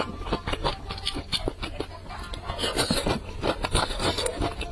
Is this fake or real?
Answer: real